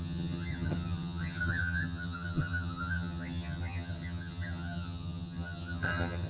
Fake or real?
fake